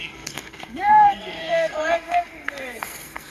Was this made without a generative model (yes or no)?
no